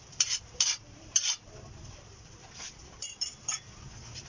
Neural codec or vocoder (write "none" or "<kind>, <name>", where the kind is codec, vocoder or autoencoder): vocoder, BigVGAN v2